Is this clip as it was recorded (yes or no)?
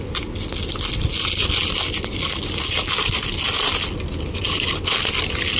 yes